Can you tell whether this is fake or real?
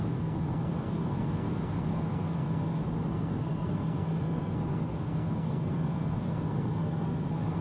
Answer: fake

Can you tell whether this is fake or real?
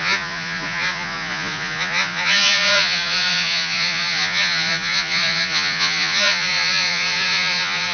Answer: fake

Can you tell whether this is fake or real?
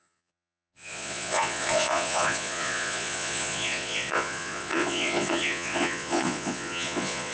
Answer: fake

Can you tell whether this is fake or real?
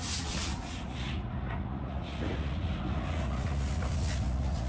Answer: fake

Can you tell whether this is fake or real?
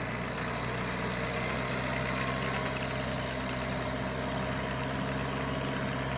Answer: real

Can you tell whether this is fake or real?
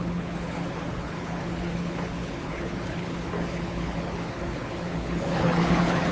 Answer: fake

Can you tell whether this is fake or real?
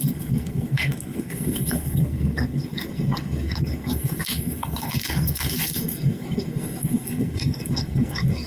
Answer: fake